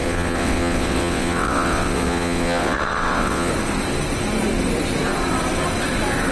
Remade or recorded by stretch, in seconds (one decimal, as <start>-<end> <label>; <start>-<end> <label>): 0.0-3.5 remade; 3.5-6.3 recorded